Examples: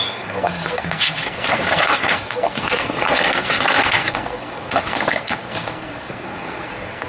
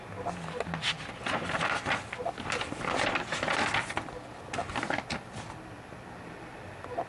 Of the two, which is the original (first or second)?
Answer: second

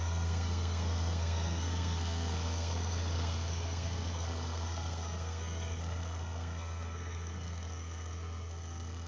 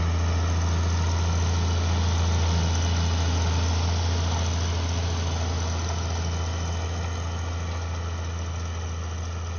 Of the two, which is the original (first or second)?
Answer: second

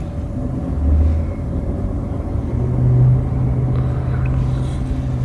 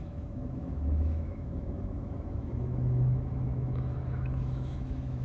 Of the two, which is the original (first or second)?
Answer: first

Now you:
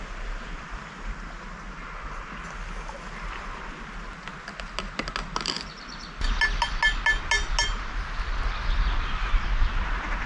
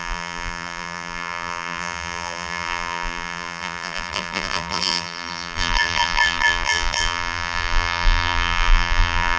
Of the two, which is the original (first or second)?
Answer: first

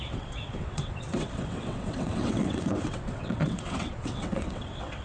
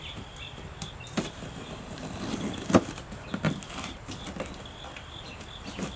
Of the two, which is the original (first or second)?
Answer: second